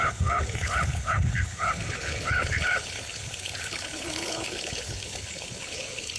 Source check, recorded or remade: remade